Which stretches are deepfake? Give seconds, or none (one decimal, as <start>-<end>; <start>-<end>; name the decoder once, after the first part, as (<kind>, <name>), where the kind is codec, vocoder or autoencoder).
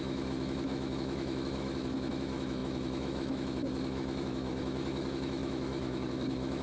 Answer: 0.0-6.6 (autoencoder, DAC-VAE)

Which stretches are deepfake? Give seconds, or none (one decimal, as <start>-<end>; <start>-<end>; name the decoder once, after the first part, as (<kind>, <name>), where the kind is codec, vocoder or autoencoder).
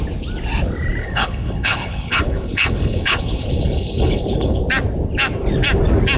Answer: 1.0-4.6 (codec, HILCodec)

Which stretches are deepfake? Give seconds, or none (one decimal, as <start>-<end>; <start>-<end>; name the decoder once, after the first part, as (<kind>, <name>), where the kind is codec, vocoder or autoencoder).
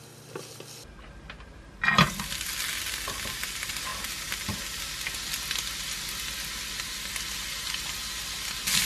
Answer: none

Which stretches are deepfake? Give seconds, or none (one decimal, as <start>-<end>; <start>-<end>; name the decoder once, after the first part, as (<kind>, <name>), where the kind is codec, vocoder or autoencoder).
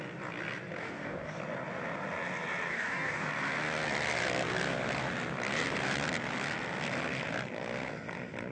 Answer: 0.8-1.4 (codec, DAC); 2.7-3.3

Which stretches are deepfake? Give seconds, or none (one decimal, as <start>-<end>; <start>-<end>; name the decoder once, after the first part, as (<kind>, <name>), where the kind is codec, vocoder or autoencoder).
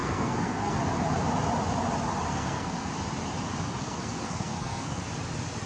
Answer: 0.0-0.8 (codec, SNAC); 2.3-2.9; 3.8-5.0